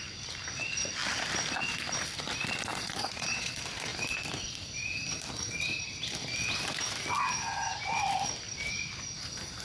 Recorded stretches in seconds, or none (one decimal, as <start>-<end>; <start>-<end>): 0.0-2.7; 3.5-9.6